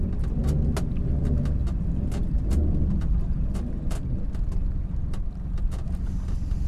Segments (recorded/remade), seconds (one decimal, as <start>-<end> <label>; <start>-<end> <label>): 0.0-6.7 recorded